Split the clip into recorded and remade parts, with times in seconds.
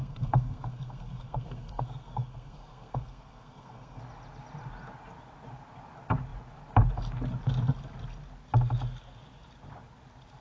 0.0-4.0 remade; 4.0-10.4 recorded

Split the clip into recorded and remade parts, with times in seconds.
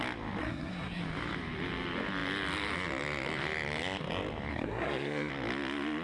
0.0-0.4 recorded; 0.4-1.0 remade; 1.0-4.5 recorded; 4.5-5.3 remade; 5.3-6.0 recorded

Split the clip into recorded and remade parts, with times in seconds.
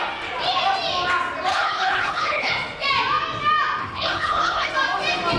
0.0-1.5 recorded; 1.5-2.5 remade; 2.5-3.8 recorded; 3.8-4.7 remade; 4.7-5.4 recorded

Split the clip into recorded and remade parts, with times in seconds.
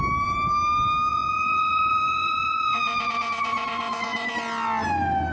0.0-1.1 recorded; 1.1-4.3 remade; 4.3-5.3 recorded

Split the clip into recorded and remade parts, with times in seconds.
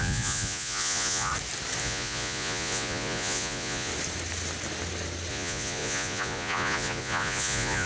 0.0-1.3 remade; 1.3-1.8 recorded; 1.8-3.9 remade; 3.9-5.3 recorded; 5.3-7.9 remade